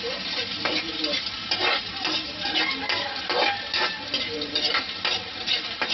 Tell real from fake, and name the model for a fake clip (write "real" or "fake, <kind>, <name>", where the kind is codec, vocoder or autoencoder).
real